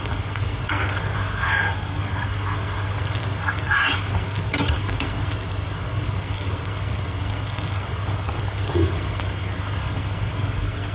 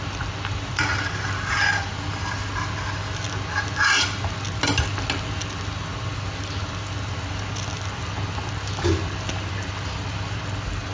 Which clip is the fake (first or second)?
first